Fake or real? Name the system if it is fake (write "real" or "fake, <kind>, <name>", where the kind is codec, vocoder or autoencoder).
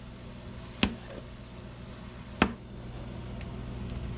real